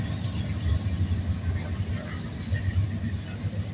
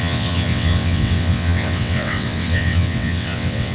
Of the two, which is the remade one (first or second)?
second